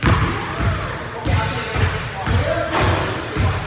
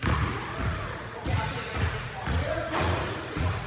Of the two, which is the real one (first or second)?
first